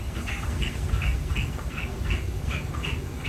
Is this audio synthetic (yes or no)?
yes